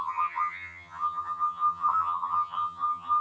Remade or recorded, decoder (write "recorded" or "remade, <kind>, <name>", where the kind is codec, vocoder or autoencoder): remade, vocoder, HiFi-GAN